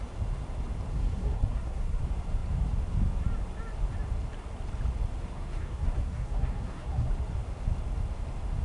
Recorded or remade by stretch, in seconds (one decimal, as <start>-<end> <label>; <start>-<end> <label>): 0.0-0.9 recorded; 0.9-2.0 remade; 2.0-5.2 recorded; 5.2-7.1 remade; 7.1-8.6 recorded